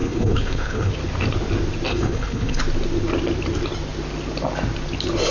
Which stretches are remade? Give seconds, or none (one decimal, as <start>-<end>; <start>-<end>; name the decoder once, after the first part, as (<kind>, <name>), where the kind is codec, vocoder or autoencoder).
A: 0.0-0.9 (codec, HILCodec); 1.9-2.6